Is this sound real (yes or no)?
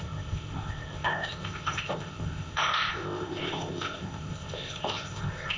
no